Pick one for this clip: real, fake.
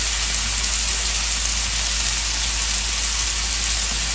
real